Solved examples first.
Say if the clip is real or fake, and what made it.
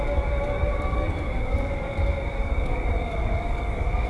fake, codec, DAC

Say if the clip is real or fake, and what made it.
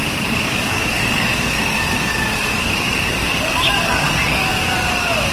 fake, codec, DAC